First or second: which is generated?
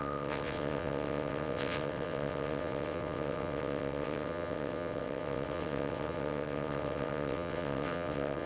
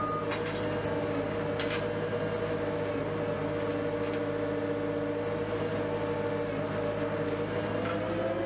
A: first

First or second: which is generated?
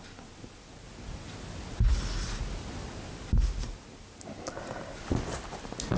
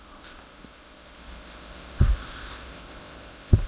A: second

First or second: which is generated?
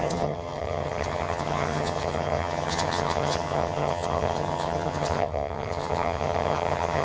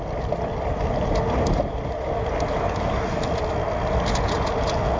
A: first